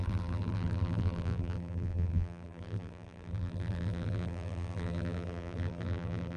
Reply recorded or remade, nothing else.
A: remade